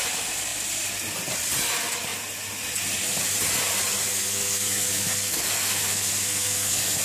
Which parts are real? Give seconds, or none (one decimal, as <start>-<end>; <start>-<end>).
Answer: 0.0-4.1